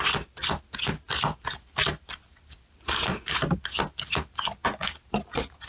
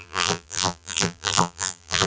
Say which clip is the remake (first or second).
second